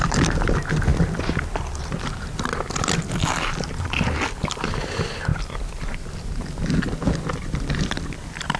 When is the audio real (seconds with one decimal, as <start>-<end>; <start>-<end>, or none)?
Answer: 0.0-8.6